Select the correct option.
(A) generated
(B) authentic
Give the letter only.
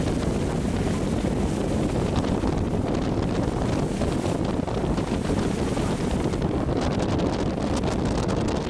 B